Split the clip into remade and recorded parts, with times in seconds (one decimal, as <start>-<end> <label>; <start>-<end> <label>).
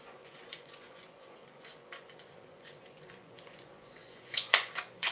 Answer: 0.0-5.1 remade